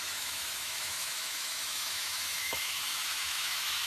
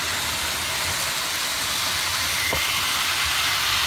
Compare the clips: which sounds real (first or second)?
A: second